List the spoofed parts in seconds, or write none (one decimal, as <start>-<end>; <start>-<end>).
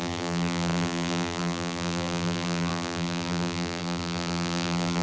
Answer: 0.0-5.0